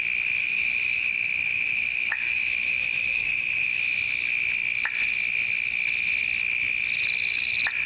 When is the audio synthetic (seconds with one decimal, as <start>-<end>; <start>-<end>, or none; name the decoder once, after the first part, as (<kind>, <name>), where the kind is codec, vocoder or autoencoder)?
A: 0.4-4.1 (autoencoder, DAC-VAE)